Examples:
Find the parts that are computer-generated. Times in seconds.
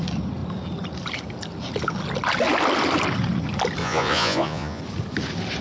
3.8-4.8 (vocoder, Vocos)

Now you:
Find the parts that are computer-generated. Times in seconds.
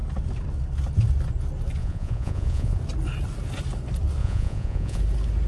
1.8-2.8 (vocoder, Vocos); 4.2-5.0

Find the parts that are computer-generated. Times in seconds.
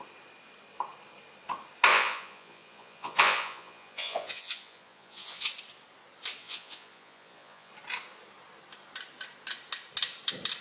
1.9-5.5 (vocoder, Vocos); 6.4-7.7